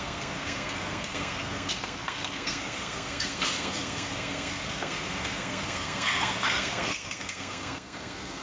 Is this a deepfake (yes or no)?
yes